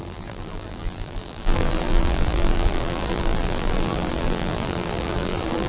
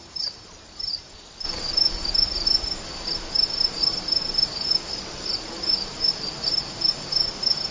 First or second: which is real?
second